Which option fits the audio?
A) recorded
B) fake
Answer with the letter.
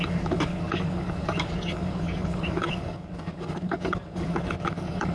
B